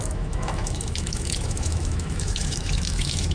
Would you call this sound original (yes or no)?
no